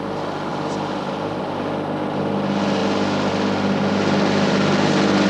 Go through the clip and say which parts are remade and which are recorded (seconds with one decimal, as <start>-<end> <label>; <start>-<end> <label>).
0.0-0.5 recorded; 0.5-1.4 remade; 1.4-5.3 recorded

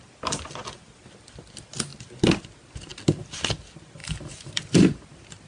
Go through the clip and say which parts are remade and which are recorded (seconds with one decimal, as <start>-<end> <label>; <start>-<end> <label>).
0.0-4.0 recorded; 4.0-5.1 remade; 5.1-5.5 recorded

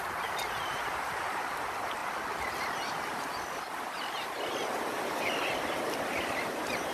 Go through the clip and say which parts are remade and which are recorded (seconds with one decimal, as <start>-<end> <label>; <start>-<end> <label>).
0.0-2.0 remade; 2.0-6.1 recorded; 6.1-6.9 remade

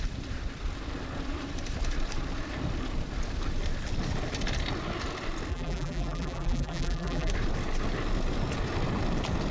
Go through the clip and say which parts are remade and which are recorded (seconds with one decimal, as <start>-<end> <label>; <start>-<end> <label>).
0.0-5.5 recorded; 5.5-7.3 remade; 7.3-9.5 recorded

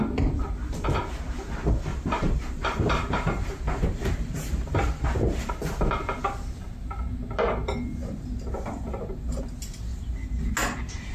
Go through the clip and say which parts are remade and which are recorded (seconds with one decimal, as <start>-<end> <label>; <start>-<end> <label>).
0.0-1.9 recorded; 1.9-5.5 remade; 5.5-8.0 recorded; 8.0-9.4 remade; 9.4-9.9 recorded; 9.9-10.5 remade; 10.5-11.1 recorded

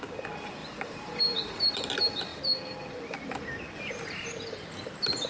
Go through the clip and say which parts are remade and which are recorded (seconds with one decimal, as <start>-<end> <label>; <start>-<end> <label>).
0.0-0.6 recorded; 0.6-1.7 remade; 1.7-5.3 recorded